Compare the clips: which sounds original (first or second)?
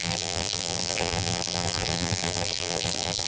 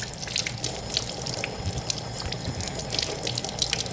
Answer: second